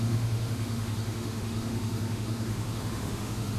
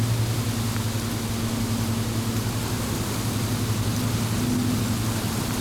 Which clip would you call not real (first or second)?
first